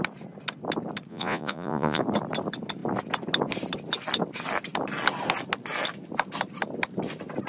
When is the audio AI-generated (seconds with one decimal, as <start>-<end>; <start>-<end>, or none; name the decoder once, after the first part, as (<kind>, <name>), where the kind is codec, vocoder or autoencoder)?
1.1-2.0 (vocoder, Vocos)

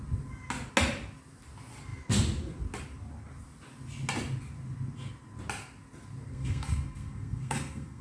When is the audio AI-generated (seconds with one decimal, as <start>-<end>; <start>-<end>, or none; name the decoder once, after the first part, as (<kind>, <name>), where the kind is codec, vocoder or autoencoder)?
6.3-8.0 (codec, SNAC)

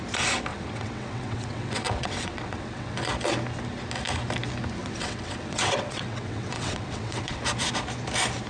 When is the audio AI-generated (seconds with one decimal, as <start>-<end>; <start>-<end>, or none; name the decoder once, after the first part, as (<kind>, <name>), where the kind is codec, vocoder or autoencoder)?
0.5-3.1 (vocoder, WaveNeXt); 4.8-7.4

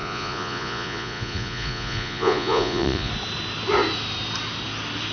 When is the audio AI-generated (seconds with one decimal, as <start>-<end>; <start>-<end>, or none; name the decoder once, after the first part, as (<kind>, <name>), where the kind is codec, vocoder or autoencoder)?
0.0-3.1 (vocoder, Vocos)

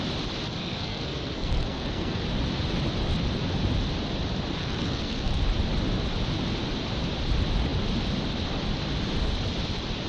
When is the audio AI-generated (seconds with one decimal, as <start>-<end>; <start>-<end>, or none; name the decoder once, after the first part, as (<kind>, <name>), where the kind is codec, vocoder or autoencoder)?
0.6-2.2 (codec, SNAC); 4.6-5.4

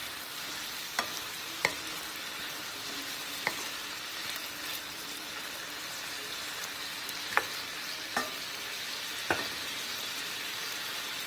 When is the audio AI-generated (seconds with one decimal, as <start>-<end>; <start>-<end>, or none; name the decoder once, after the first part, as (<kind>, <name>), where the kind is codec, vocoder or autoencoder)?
none

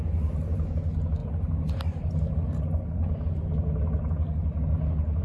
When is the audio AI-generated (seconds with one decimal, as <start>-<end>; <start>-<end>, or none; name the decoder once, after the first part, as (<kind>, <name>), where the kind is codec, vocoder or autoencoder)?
none

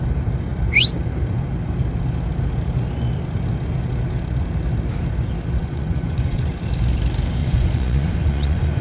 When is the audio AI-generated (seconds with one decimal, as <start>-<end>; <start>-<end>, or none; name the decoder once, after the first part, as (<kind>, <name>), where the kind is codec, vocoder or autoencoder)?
5.6-6.5 (vocoder, Vocos); 7.4-8.8